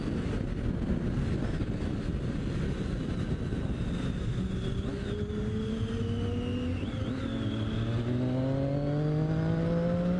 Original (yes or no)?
yes